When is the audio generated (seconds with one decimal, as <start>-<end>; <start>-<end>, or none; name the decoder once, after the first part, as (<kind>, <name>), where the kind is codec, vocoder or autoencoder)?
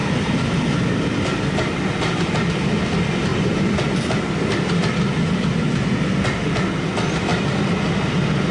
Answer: 3.3-4.2 (vocoder, BigVGAN v2)